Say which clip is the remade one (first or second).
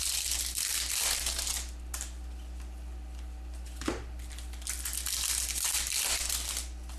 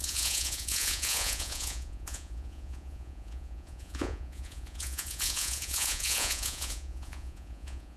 second